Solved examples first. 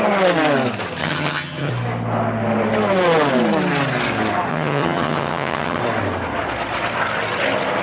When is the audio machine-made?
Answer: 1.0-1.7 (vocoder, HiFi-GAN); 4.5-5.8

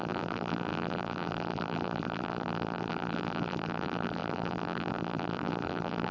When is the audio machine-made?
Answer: 0.0-6.1 (vocoder, BigVGAN v2)

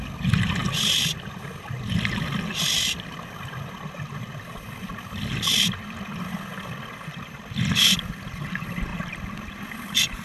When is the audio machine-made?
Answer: none

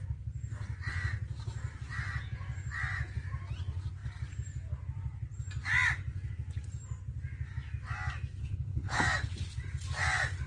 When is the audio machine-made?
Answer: 8.4-9.0 (codec, HILCodec)